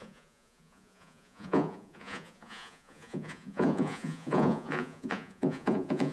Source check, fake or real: fake